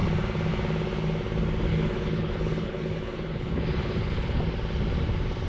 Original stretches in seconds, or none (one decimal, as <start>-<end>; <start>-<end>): 0.0-1.7; 4.4-5.5